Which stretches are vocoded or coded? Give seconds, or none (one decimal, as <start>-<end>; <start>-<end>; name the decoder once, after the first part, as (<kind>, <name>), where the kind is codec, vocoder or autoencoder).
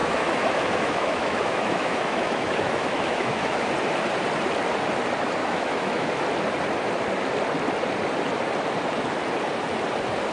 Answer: 0.0-3.7 (autoencoder, DAC-VAE); 5.4-6.1